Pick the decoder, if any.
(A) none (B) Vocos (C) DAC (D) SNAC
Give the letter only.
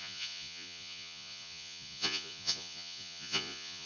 B